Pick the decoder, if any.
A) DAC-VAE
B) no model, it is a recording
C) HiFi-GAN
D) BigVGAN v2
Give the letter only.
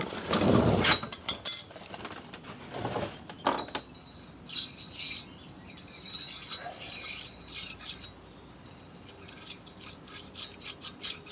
B